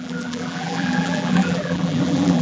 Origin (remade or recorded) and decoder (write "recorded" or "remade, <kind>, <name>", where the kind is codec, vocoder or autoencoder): remade, vocoder, BigVGAN v2